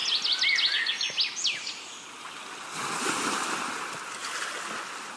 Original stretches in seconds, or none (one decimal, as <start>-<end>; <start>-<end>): 0.0-5.2

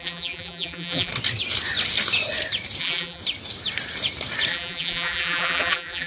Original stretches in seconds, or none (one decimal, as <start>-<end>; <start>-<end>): 1.1-2.8; 3.2-4.5

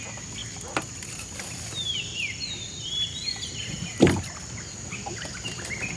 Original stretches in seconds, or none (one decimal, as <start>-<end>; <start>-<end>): 0.0-6.0

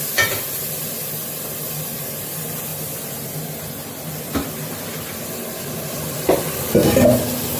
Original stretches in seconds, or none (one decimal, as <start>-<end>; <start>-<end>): 0.0-2.7; 6.4-7.6

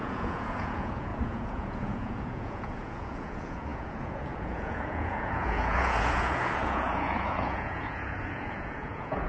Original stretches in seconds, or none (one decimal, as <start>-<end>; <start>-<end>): none

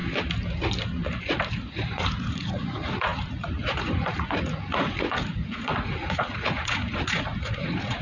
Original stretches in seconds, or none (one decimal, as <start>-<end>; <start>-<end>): 0.0-1.2